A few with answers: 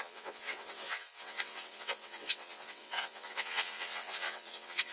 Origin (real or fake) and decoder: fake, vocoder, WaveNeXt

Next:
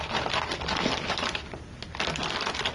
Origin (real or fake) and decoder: real